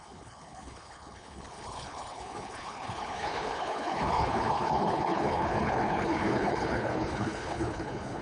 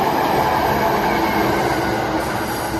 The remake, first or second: first